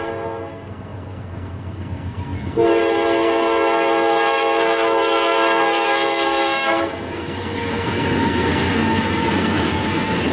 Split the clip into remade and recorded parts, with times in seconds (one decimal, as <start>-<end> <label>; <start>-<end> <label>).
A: 0.0-10.3 remade

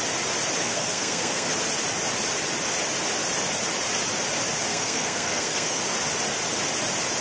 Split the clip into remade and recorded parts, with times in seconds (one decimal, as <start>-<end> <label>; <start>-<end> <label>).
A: 0.0-0.6 recorded; 0.6-1.5 remade; 1.5-4.7 recorded; 4.7-5.8 remade; 5.8-7.2 recorded

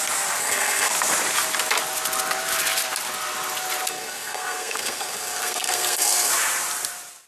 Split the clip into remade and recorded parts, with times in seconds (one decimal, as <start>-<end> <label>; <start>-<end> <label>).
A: 0.0-0.4 recorded; 0.4-0.9 remade; 0.9-3.9 recorded; 3.9-6.3 remade; 6.3-7.3 recorded

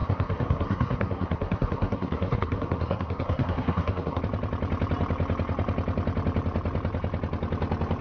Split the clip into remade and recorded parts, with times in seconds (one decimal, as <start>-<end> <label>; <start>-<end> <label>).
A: 0.0-4.2 remade; 4.2-8.0 recorded

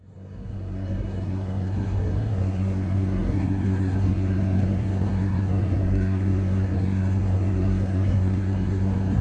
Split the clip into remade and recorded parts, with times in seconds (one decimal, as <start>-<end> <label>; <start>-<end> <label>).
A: 0.0-9.2 remade

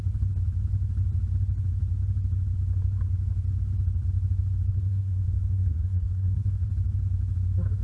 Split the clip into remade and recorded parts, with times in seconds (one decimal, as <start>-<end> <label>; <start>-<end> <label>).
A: 0.0-4.7 recorded; 4.7-6.7 remade; 6.7-7.8 recorded

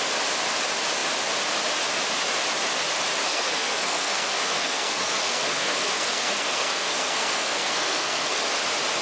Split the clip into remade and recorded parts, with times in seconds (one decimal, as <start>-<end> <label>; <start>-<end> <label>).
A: 0.0-3.2 recorded; 3.2-8.4 remade; 8.4-9.0 recorded

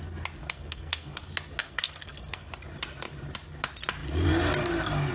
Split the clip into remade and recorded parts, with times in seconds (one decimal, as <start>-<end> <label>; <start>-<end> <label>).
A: 0.0-0.4 recorded; 0.4-1.2 remade; 1.2-1.6 recorded; 1.6-2.5 remade; 2.5-5.1 recorded